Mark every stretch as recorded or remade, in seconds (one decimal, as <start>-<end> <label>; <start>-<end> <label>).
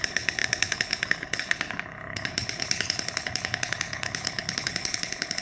0.0-5.4 remade